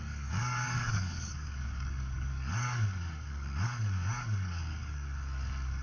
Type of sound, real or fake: fake